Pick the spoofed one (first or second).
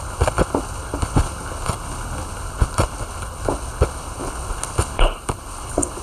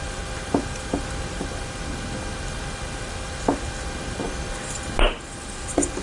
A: first